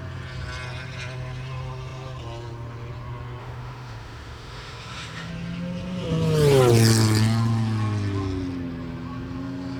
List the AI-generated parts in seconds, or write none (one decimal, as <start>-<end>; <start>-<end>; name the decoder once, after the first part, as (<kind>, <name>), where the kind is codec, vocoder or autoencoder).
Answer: 3.4-5.3 (autoencoder, DAC-VAE)